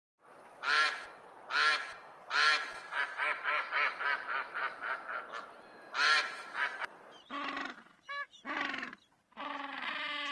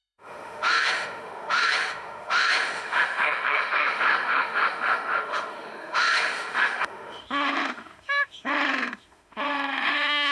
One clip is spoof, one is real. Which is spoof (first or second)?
second